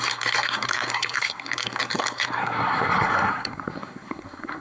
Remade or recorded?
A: remade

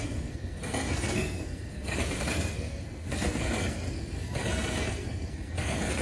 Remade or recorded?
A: remade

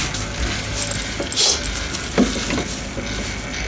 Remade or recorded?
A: recorded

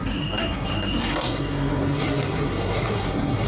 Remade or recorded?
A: remade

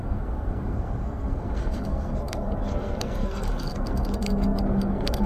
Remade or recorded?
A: remade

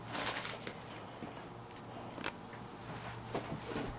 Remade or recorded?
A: recorded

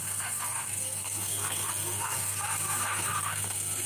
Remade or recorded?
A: remade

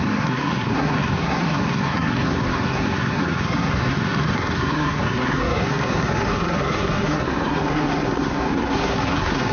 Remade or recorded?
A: remade